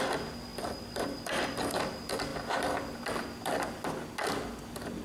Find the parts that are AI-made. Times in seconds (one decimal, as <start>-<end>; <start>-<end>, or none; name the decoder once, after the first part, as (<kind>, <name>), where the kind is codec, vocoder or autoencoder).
none